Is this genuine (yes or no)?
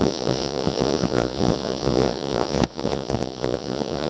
no